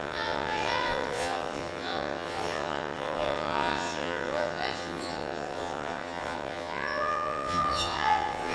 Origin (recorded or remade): remade